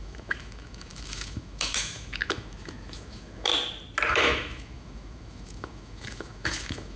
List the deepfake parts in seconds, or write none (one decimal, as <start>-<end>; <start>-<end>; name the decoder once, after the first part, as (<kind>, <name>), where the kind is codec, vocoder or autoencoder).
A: 0.0-3.5 (autoencoder, DAC-VAE); 4.1-7.0